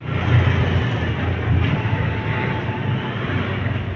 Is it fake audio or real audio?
real